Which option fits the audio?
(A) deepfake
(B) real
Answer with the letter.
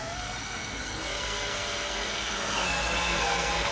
A